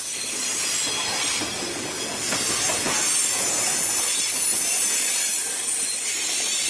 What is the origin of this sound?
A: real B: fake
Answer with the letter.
A